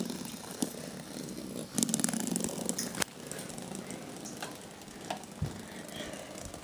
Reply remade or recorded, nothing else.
recorded